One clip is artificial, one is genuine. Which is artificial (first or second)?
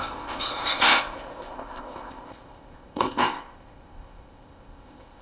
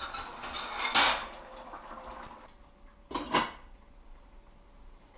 first